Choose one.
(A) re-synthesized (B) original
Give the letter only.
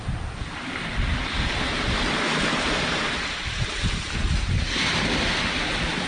B